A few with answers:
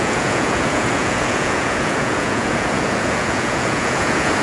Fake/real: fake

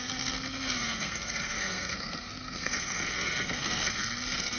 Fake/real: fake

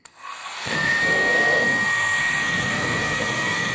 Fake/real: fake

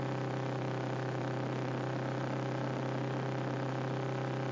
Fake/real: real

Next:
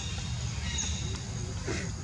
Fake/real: real